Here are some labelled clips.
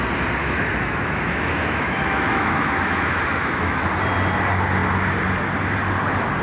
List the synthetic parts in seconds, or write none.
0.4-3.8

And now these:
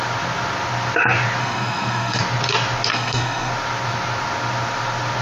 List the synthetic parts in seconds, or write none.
1.4-2.2; 2.9-3.5